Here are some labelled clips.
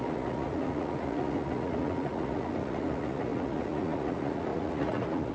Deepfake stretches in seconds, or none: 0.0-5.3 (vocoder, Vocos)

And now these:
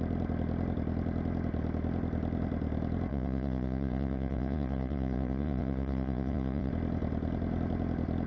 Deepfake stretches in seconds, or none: 3.1-6.7 (vocoder, Vocos)

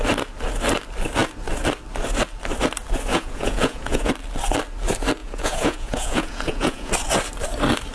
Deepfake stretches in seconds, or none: 3.1-4.1 (vocoder, Vocos); 5.2-6.9

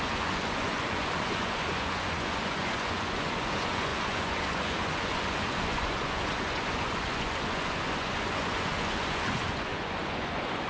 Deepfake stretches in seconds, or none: 0.0-10.7 (vocoder, Vocos)

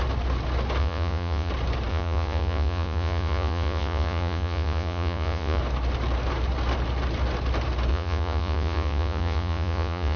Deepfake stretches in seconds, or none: 0.8-1.5 (vocoder, Vocos); 1.9-5.6; 7.9-10.2